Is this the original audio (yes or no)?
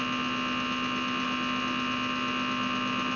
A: yes